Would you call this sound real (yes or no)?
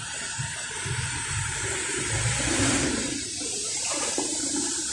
no